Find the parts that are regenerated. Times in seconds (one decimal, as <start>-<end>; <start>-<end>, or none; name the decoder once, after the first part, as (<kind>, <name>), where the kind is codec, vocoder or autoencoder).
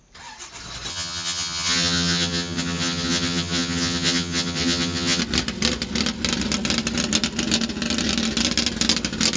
0.9-5.2 (vocoder, HiFi-GAN)